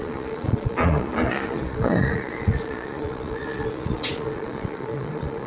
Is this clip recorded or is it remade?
remade